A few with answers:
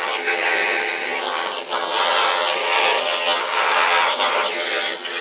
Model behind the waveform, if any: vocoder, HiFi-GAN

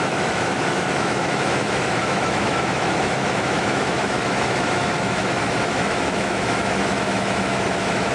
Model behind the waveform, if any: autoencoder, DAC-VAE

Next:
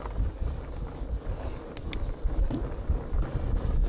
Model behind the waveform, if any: none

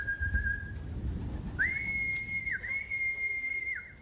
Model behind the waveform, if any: none